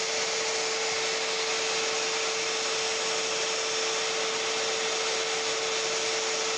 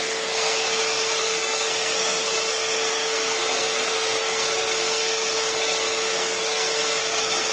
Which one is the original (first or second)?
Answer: first